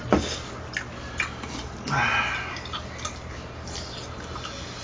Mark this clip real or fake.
real